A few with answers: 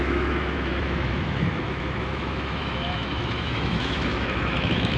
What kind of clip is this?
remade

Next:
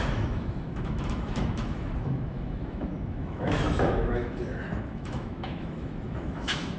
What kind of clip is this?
remade